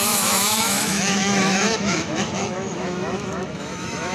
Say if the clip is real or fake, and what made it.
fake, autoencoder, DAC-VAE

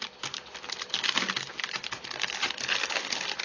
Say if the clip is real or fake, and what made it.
real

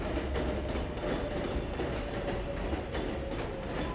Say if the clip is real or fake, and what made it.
real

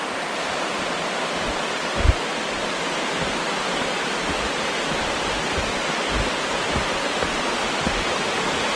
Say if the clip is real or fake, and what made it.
real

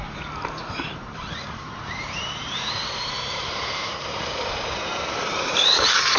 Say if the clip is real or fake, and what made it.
fake, vocoder, BigVGAN v2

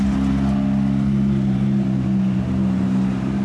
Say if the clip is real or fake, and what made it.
real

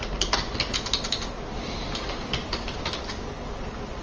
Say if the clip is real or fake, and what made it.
real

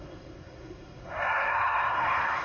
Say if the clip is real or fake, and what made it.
fake, codec, SNAC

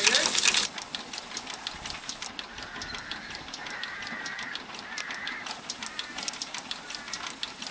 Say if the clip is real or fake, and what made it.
real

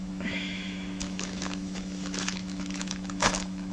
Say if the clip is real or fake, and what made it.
fake, autoencoder, DAC-VAE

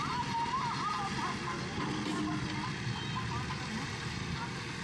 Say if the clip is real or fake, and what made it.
real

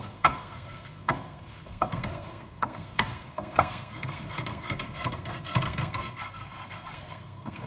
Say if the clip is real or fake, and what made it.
fake, codec, SNAC